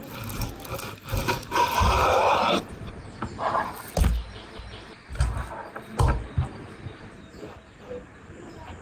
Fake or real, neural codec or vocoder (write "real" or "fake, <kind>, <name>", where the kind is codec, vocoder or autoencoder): real